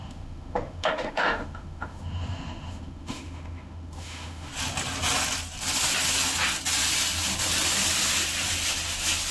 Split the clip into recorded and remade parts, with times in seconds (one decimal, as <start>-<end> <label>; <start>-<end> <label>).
0.0-4.5 remade; 4.5-9.3 recorded